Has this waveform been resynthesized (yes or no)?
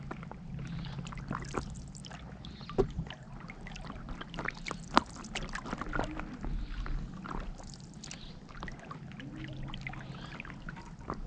no